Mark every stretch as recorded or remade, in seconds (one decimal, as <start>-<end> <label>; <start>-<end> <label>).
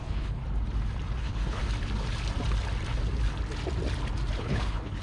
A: 0.0-0.4 remade; 0.4-1.2 recorded; 1.2-1.6 remade; 1.6-4.4 recorded; 4.4-5.0 remade